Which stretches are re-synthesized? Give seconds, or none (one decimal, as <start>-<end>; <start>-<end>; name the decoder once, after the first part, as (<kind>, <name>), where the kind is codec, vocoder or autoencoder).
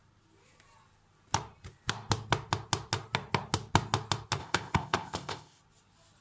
4.4-5.6 (codec, ZipCodec)